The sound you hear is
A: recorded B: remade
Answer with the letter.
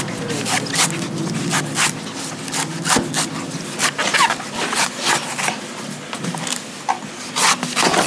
A